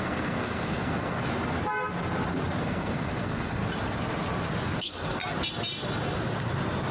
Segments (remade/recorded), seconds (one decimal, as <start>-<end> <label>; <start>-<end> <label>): 0.0-1.2 remade; 1.2-2.6 recorded; 2.6-3.6 remade; 3.6-4.8 recorded; 4.8-5.2 remade; 5.2-6.9 recorded

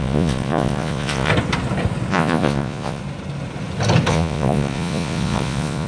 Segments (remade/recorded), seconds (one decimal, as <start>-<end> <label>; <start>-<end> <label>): 0.0-1.3 remade; 1.3-2.1 recorded; 2.1-3.0 remade; 3.0-4.1 recorded; 4.1-5.9 remade

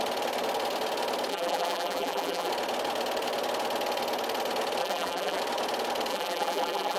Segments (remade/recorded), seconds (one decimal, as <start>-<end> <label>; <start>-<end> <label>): 0.0-1.3 recorded; 1.3-2.5 remade; 2.5-4.8 recorded; 4.8-5.4 remade; 5.4-6.1 recorded; 6.1-7.0 remade

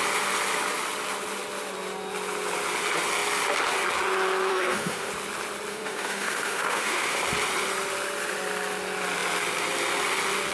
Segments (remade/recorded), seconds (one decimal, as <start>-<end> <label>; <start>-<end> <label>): 0.0-4.5 recorded; 4.5-5.1 remade; 5.1-5.7 recorded; 5.7-7.2 remade; 7.2-10.5 recorded

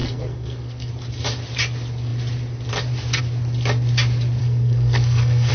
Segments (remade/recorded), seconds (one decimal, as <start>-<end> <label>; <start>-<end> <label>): 0.0-0.9 remade; 0.9-4.4 recorded; 4.4-5.5 remade

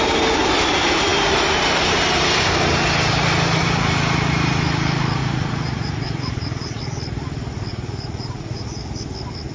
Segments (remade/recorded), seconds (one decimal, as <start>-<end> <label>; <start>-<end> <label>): 0.0-5.2 recorded; 5.2-6.8 remade; 6.8-7.7 recorded; 7.7-8.8 remade; 8.8-9.5 recorded